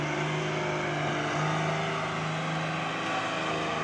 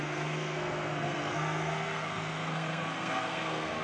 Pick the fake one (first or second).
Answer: second